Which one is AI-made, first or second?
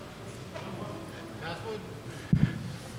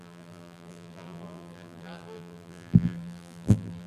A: second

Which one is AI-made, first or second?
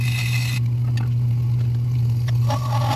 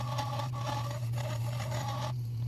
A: second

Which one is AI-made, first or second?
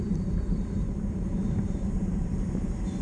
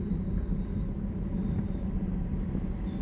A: first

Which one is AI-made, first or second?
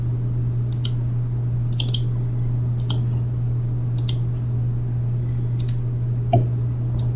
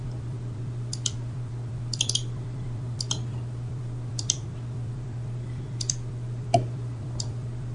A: second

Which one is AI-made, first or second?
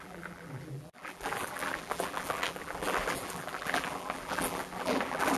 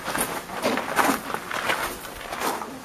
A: first